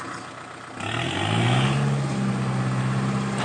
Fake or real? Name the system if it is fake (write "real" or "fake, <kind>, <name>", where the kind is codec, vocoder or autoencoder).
real